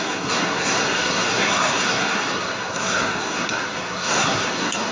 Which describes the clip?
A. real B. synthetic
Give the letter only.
B